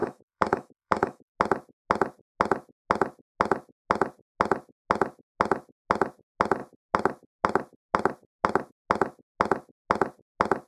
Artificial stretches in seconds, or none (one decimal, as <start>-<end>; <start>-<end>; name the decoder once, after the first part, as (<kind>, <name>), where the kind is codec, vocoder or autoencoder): 0.0-1.3 (autoencoder, DAC-VAE)